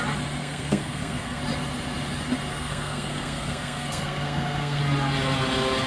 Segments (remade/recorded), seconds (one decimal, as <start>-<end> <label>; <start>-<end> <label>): 0.0-0.4 recorded; 0.4-1.4 remade; 1.4-2.5 recorded; 2.5-4.8 remade; 4.8-5.9 recorded

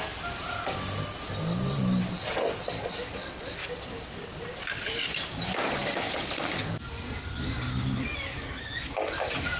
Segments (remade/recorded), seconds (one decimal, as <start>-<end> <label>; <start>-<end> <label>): 0.0-9.6 recorded

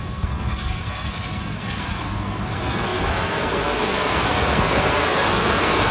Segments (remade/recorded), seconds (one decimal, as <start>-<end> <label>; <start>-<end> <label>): 0.0-5.9 remade

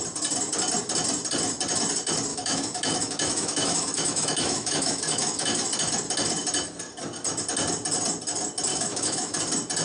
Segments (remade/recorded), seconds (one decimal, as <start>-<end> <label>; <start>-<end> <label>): 0.0-2.3 recorded; 2.3-5.7 remade; 5.7-8.7 recorded; 8.7-9.4 remade; 9.4-9.8 recorded

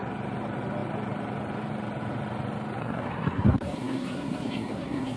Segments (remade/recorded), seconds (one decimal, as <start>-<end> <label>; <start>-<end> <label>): 0.0-2.8 recorded; 2.8-5.2 remade